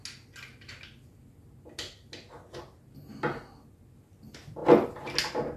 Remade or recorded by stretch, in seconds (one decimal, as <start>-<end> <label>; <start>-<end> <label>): 0.0-5.6 recorded